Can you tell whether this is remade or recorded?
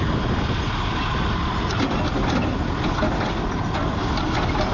recorded